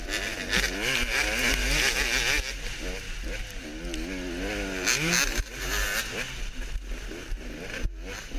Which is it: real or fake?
real